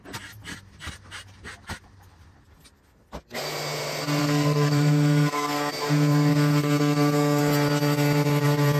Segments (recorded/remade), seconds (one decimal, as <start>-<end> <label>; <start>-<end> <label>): 0.0-4.2 recorded; 4.2-5.7 remade; 5.7-6.3 recorded; 6.3-7.4 remade; 7.4-8.8 recorded

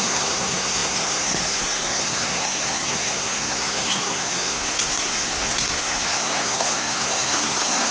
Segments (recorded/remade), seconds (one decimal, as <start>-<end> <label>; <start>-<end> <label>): 0.0-7.9 remade

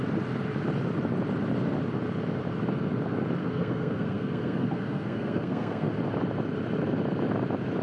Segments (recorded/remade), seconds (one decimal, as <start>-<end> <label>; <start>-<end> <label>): 0.0-3.4 recorded; 3.4-5.9 remade; 5.9-7.8 recorded

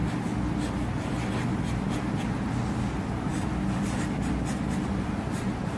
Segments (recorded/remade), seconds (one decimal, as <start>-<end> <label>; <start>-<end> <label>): 0.0-5.8 recorded